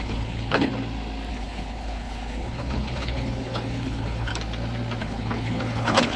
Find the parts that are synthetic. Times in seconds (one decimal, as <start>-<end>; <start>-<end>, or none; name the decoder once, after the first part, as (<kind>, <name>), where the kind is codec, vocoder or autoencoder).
0.0-0.7 (codec, HILCodec); 1.3-4.3; 5.0-6.2